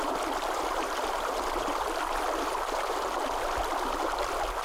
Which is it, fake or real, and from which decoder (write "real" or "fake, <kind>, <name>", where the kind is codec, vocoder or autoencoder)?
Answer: fake, vocoder, BigVGAN v2